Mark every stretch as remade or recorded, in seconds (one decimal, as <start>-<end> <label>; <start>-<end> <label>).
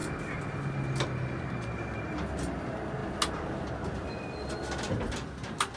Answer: 0.0-5.8 recorded